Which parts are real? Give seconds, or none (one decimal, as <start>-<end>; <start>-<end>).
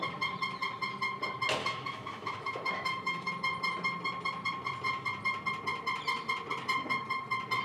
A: 0.0-1.6; 3.3-7.6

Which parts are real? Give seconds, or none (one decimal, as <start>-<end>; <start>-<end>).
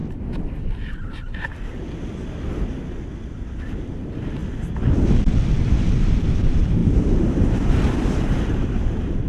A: 0.0-3.3; 4.4-5.8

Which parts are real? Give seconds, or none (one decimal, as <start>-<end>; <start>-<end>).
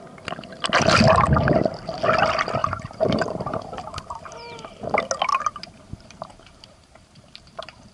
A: 0.0-2.6; 3.7-5.3